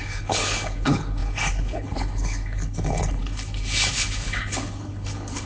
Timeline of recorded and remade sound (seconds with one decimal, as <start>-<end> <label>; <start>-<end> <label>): 0.0-5.5 remade